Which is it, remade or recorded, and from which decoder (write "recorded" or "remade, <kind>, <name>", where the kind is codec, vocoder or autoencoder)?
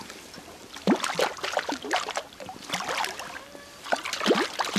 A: remade, vocoder, BigVGAN v2